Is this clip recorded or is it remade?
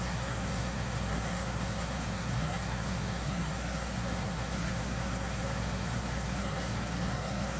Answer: remade